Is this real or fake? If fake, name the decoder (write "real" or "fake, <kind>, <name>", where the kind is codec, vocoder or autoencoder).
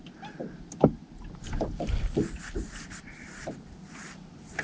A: real